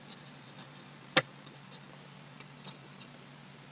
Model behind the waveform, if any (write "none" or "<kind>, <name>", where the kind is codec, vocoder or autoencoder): none